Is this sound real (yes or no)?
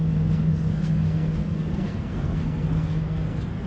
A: no